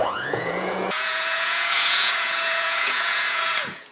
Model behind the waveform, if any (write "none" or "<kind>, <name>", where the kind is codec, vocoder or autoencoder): vocoder, Vocos